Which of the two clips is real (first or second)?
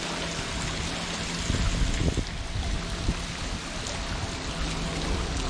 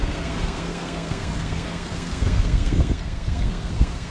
first